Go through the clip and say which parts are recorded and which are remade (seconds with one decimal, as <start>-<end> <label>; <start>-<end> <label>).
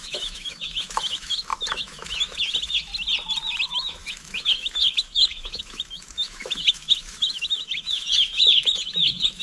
0.0-2.9 remade; 2.9-3.6 recorded; 3.6-9.4 remade